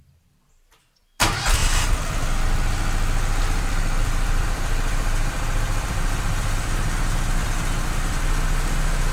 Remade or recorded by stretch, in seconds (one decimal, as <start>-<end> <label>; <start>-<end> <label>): 0.0-1.6 remade; 1.6-3.4 recorded; 3.4-9.1 remade